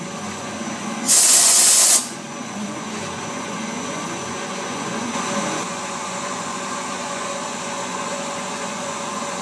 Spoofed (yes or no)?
yes